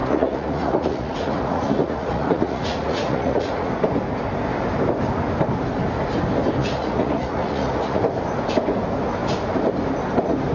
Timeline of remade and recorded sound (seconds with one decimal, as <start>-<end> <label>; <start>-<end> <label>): 0.0-3.7 remade; 3.7-6.6 recorded; 6.6-8.0 remade; 8.0-10.5 recorded